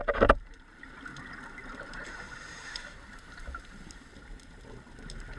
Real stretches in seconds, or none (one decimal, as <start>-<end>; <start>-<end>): 0.9-1.7; 4.9-5.4